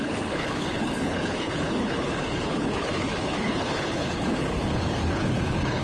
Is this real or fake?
fake